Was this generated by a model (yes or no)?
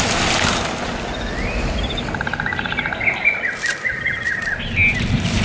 no